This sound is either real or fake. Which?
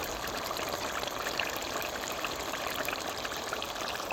fake